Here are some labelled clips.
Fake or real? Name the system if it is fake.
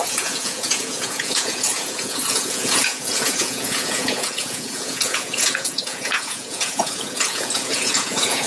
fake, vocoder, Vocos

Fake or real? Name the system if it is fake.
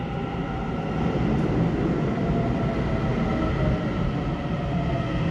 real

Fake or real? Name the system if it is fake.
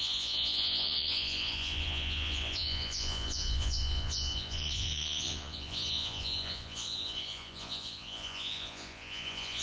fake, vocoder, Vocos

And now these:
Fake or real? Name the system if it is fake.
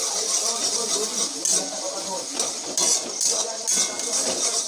real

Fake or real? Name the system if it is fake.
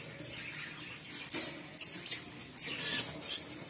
real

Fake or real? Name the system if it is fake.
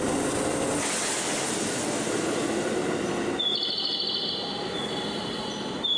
real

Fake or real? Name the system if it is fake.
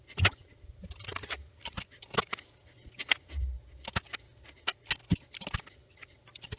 real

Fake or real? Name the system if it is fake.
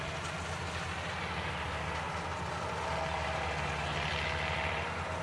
real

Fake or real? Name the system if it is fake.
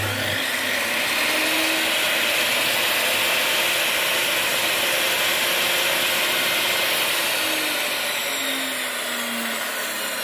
real